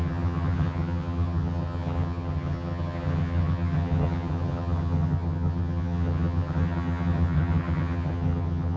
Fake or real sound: fake